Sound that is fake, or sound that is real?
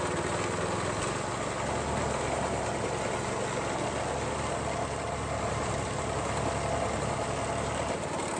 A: real